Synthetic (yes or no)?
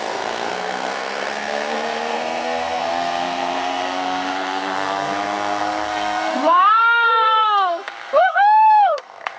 yes